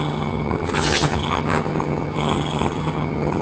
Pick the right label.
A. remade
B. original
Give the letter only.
A